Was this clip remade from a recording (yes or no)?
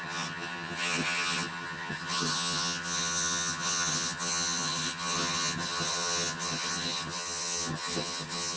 yes